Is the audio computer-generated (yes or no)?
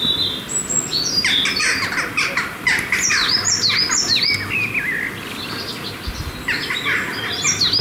no